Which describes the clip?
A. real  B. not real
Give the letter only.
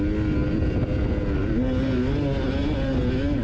A